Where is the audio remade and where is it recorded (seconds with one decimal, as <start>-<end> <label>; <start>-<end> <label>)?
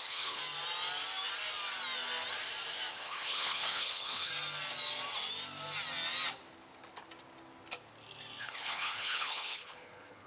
0.0-0.4 remade; 0.4-2.9 recorded; 2.9-4.3 remade; 4.3-8.4 recorded; 8.4-10.3 remade